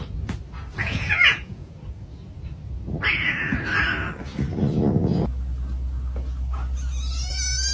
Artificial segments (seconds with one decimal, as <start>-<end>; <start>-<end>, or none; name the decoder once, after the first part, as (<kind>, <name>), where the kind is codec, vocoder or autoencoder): 0.8-1.7 (vocoder, Vocos)